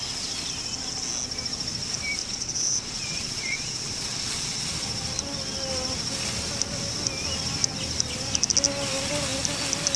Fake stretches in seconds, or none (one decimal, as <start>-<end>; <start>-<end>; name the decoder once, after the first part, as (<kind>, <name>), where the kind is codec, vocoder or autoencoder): 2.2-4.6 (vocoder, Vocos)